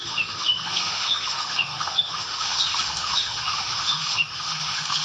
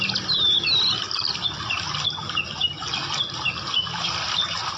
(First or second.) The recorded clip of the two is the second